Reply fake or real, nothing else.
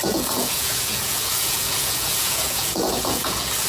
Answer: fake